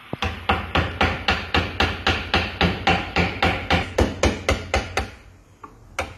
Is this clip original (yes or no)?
yes